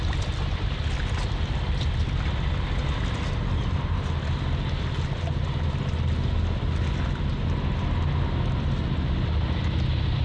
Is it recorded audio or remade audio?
recorded